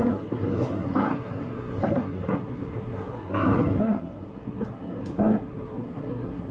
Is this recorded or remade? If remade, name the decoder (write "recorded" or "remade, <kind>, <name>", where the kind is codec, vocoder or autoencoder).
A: remade, codec, SNAC